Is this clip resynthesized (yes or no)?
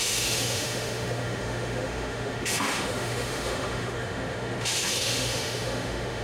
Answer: yes